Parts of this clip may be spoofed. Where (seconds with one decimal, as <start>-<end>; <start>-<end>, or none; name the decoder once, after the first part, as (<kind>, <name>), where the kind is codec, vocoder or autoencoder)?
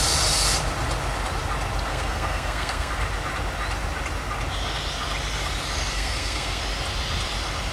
1.9-2.9 (codec, SNAC); 5.9-6.6